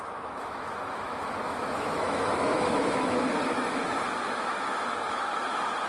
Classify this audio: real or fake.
fake